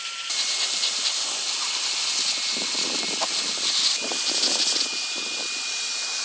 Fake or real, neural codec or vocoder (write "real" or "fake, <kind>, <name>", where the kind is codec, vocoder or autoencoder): fake, vocoder, BigVGAN v2